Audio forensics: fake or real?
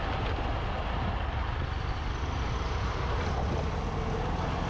real